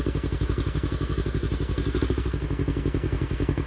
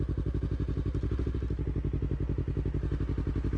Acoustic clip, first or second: second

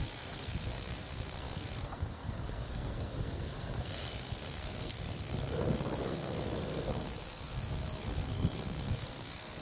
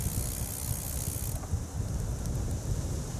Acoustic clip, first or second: second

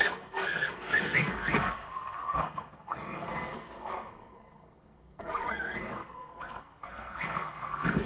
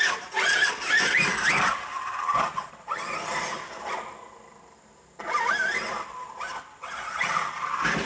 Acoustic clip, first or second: second